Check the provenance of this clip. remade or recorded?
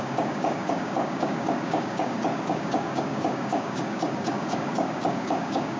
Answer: remade